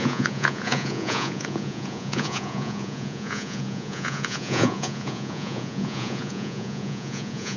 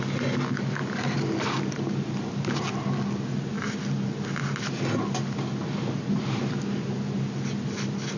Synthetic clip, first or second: first